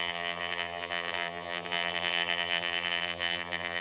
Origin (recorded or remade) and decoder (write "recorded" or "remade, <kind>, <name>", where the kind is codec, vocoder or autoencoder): remade, vocoder, BigVGAN v2